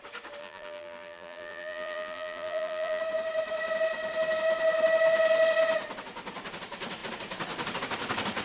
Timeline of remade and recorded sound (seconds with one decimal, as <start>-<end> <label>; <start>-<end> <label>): 0.0-0.4 recorded; 0.4-3.0 remade; 3.0-8.4 recorded